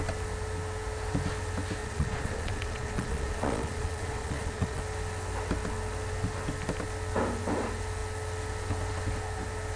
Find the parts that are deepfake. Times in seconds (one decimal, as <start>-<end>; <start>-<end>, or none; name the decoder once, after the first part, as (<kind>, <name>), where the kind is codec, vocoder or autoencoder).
1.8-4.8 (vocoder, Vocos)